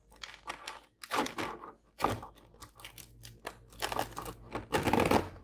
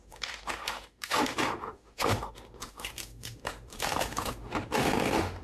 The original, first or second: first